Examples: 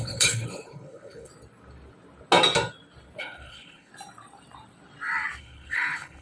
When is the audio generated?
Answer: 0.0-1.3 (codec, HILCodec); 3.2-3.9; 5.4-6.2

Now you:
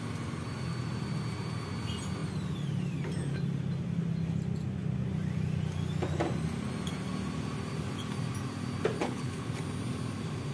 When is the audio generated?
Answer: 9.0-9.5 (codec, HILCodec)

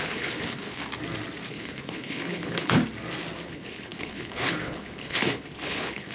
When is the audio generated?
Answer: 0.0-0.8 (codec, HILCodec); 1.5-2.8; 3.5-6.1

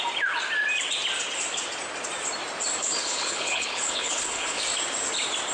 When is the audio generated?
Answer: 2.8-4.6 (codec, HILCodec)

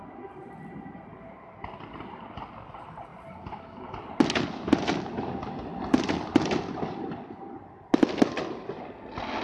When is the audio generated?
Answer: none

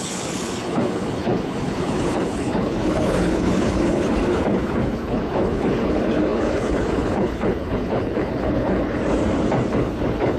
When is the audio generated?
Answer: 0.0-9.0 (codec, HILCodec); 9.7-10.4

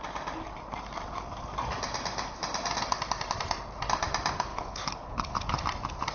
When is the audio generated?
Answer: 4.5-5.6 (codec, HILCodec)

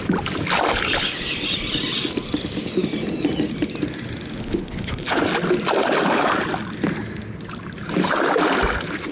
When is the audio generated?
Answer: 4.4-5.2 (codec, HILCodec)